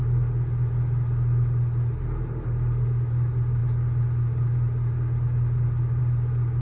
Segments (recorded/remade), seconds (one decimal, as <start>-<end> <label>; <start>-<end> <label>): 0.0-6.6 recorded